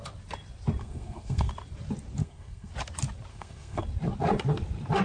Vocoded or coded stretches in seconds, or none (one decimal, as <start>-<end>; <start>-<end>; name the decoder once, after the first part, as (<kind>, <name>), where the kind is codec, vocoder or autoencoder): 0.8-1.5 (codec, SNAC); 2.2-2.7; 3.3-3.8